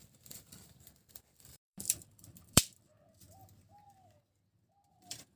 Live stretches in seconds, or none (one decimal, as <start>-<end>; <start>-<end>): 2.6-4.9